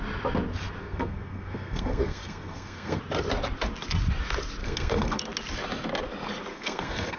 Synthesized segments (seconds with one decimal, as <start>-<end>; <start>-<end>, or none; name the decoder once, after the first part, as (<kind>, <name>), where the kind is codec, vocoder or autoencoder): 0.8-3.0 (codec, SNAC); 4.6-5.2; 6.5-7.2